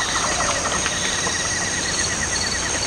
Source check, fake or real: fake